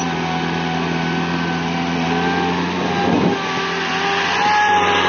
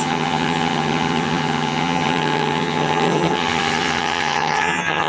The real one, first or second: first